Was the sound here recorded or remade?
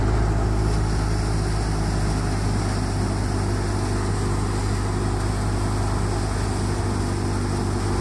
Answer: recorded